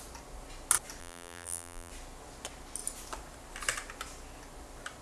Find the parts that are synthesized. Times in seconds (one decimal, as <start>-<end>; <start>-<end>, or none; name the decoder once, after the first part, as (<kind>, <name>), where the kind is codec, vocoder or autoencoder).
1.0-1.9 (vocoder, BigVGAN v2)